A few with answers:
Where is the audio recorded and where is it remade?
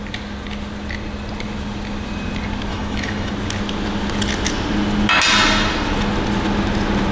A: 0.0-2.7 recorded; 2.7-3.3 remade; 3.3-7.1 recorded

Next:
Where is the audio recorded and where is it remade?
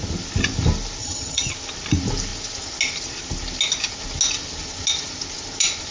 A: 0.0-1.0 recorded; 1.0-1.5 remade; 1.5-5.9 recorded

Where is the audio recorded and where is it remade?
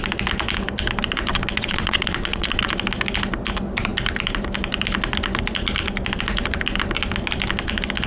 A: 0.0-1.3 recorded; 1.3-2.7 remade; 2.7-8.1 recorded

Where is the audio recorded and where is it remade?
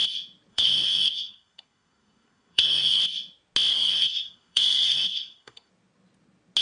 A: 0.0-0.5 recorded; 0.5-3.0 remade; 3.0-3.7 recorded; 3.7-5.7 remade; 5.7-6.6 recorded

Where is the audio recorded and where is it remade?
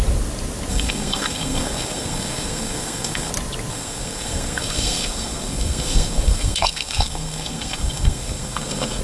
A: 0.0-0.7 recorded; 0.7-3.3 remade; 3.3-3.7 recorded; 3.7-9.0 remade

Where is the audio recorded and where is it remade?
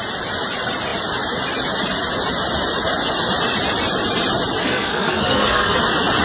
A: 0.0-4.6 recorded; 4.6-5.8 remade; 5.8-6.2 recorded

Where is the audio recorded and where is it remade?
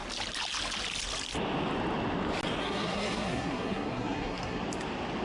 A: 0.0-2.6 recorded; 2.6-4.6 remade; 4.6-5.2 recorded